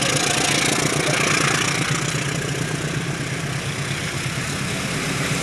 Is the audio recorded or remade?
recorded